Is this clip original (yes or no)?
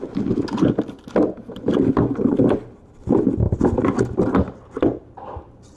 yes